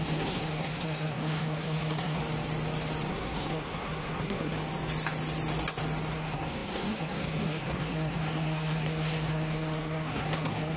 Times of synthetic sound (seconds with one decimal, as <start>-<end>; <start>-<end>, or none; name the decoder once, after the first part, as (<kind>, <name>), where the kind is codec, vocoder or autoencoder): 0.0-2.2 (codec, SNAC); 3.1-4.6; 6.1-10.8